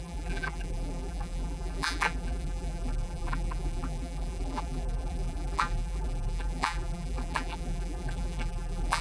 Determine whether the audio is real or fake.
fake